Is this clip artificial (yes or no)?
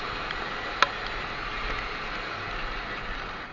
no